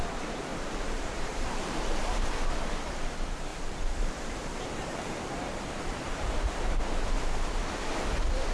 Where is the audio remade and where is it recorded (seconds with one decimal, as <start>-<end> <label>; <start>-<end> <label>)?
0.0-0.5 recorded; 0.5-3.1 remade; 3.1-3.5 recorded; 3.5-6.8 remade; 6.8-8.5 recorded